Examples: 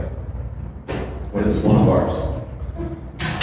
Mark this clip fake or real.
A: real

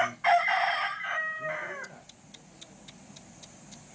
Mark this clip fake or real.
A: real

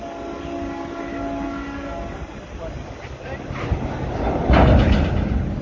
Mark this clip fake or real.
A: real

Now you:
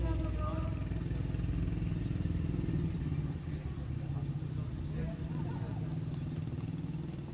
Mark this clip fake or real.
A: real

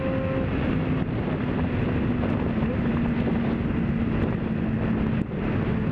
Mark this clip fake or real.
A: real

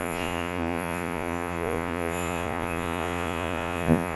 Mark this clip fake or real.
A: fake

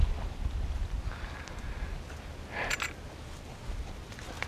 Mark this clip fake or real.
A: real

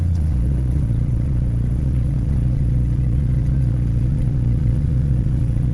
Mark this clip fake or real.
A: fake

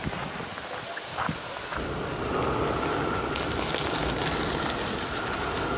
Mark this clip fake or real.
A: real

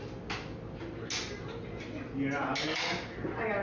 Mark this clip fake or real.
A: real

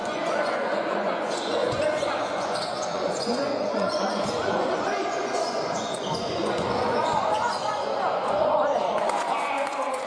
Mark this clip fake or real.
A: fake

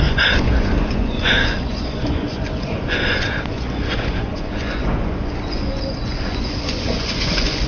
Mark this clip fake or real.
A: fake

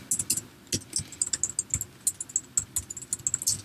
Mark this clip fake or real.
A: real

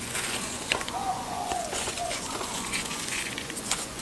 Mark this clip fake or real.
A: fake